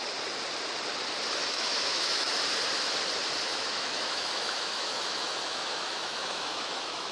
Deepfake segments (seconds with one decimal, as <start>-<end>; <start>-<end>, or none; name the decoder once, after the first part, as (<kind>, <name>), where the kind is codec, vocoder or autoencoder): 1.4-2.3 (autoencoder, DAC-VAE); 3.5-7.1